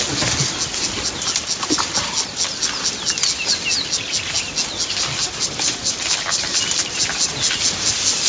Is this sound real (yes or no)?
yes